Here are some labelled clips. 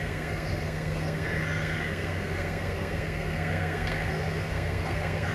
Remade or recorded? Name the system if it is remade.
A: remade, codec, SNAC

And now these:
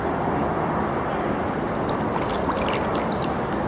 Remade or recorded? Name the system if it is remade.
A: recorded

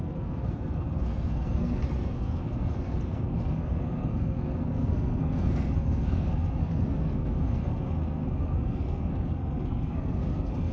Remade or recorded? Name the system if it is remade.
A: remade, codec, SNAC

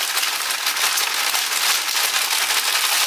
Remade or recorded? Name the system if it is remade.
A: recorded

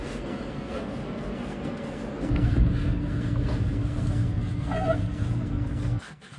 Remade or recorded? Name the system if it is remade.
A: remade, codec, SNAC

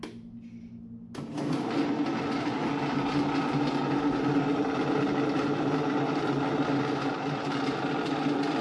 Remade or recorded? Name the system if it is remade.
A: recorded